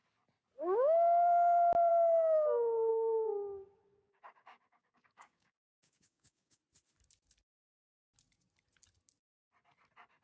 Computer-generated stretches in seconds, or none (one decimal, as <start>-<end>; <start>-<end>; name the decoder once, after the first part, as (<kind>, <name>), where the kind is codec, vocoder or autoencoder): 2.9-6.6 (codec, DAC)